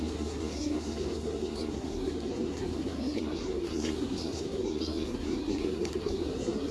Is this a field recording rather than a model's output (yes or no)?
no